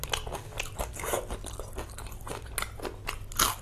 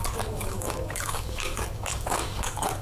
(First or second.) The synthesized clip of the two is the second